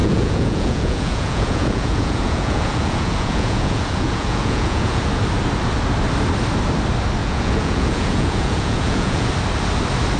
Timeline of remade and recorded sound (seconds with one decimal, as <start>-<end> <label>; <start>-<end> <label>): 0.0-5.1 remade; 5.1-7.2 recorded; 7.2-9.3 remade; 9.3-10.2 recorded

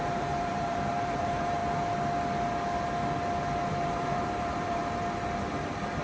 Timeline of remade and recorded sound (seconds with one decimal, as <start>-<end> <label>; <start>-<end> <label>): 0.0-1.6 remade; 1.6-3.7 recorded; 3.7-4.8 remade; 4.8-6.0 recorded

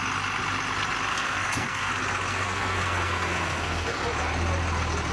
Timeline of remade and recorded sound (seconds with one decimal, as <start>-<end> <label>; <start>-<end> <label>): 0.0-1.1 recorded; 1.1-1.9 remade; 1.9-2.3 recorded; 2.3-4.0 remade; 4.0-5.1 recorded

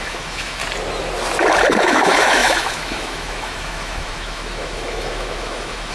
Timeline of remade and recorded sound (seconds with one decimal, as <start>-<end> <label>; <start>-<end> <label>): 0.0-0.6 remade; 0.6-1.8 recorded; 1.8-5.9 remade

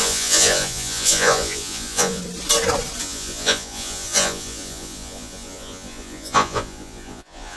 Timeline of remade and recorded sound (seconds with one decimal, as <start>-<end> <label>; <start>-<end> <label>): 0.0-2.2 remade; 2.2-3.0 recorded; 3.0-7.6 remade

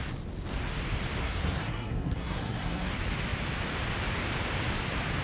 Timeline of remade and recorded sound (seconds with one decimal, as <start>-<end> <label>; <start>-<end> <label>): 0.0-1.2 recorded; 1.2-2.9 remade; 2.9-5.2 recorded